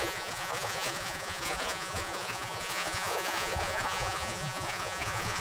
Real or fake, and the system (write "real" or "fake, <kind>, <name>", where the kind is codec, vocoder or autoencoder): fake, vocoder, Vocos